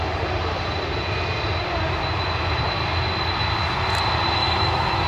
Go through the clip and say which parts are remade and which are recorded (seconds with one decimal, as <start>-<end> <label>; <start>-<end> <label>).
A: 0.0-4.4 recorded; 4.4-5.1 remade